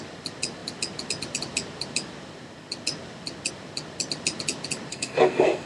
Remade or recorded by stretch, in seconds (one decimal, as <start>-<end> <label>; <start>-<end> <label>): 0.0-4.9 recorded; 4.9-5.7 remade